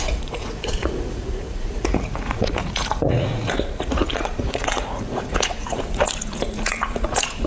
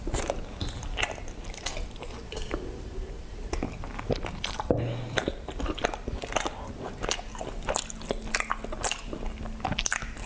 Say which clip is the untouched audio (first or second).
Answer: second